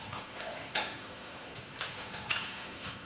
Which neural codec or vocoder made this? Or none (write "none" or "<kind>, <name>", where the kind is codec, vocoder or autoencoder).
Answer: autoencoder, DAC-VAE